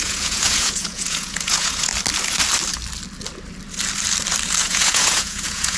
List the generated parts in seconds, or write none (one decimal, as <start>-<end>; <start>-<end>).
0.0-1.9; 4.6-5.8